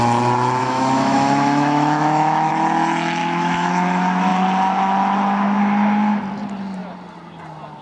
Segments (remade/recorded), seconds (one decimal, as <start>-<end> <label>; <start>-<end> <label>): 0.0-0.6 recorded; 0.6-2.5 remade; 2.5-3.2 recorded; 3.2-3.7 remade; 3.7-7.8 recorded